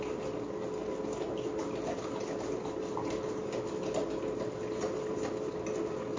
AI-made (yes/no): no